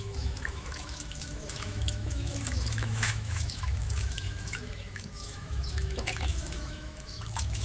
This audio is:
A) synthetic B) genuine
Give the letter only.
A